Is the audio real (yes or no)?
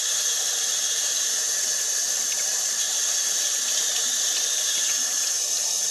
yes